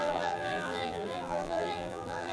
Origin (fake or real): fake